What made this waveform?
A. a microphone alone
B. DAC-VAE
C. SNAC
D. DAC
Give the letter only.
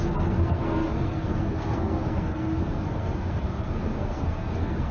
C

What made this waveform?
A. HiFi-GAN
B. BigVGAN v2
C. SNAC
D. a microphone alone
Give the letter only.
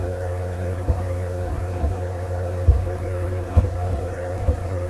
C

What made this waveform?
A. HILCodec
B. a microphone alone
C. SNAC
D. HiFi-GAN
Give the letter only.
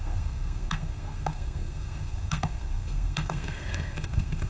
C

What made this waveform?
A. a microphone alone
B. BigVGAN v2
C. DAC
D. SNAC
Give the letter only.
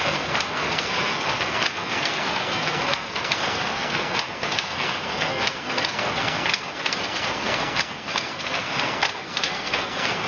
D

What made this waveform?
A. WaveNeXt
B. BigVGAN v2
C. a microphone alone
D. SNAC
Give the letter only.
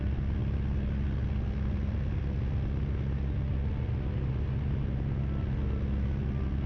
C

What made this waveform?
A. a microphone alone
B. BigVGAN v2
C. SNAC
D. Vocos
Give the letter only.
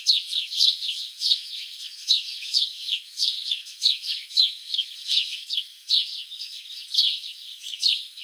C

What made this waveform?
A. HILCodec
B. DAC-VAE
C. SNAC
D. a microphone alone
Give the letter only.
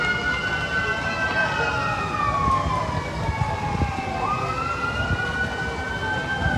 D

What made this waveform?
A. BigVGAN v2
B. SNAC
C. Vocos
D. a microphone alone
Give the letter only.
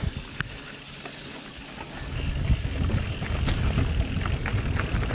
D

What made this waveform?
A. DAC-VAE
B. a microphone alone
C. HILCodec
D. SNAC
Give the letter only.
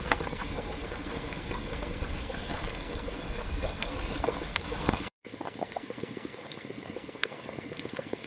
D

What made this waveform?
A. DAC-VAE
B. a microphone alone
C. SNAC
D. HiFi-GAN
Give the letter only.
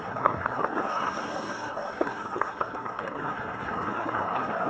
C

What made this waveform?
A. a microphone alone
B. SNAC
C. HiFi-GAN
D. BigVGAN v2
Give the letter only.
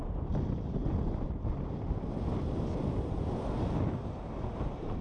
A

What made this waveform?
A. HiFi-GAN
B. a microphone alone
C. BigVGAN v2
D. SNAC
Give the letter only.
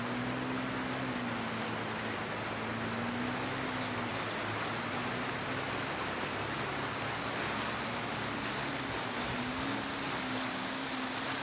B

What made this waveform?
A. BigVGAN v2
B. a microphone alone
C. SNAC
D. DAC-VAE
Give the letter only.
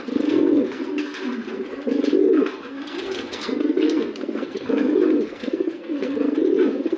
C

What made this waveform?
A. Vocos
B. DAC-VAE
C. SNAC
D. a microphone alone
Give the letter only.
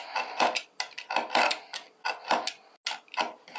D